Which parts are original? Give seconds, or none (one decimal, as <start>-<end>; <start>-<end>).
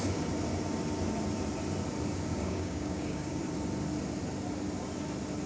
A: 0.0-2.3; 3.4-5.5